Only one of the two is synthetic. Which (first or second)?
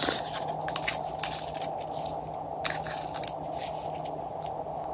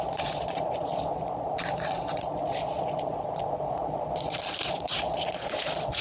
second